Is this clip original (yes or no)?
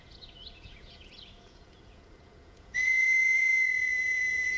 no